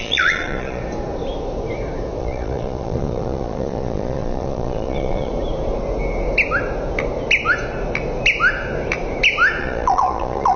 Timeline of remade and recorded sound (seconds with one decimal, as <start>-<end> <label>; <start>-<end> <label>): 0.0-0.8 remade; 0.8-2.2 recorded; 2.2-5.3 remade; 5.3-9.6 recorded; 9.6-10.6 remade